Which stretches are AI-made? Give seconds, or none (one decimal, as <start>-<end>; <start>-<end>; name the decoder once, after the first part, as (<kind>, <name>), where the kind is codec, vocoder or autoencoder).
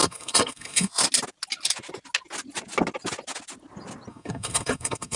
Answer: 0.0-1.0 (codec, SNAC); 4.1-5.2